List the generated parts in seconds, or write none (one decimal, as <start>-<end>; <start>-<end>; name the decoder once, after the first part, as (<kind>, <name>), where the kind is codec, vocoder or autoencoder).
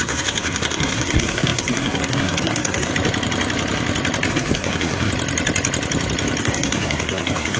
0.0-2.9 (codec, SNAC); 4.3-5.1; 6.4-7.6